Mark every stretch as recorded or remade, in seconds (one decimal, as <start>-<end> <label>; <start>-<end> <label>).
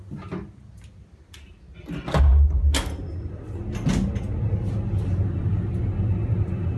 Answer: 0.0-6.8 recorded